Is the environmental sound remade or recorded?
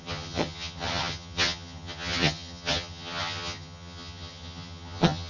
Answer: remade